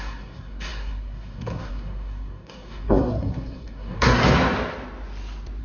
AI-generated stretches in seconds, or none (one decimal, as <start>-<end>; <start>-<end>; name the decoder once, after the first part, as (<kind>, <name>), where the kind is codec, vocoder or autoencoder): 0.0-4.2 (codec, SNAC)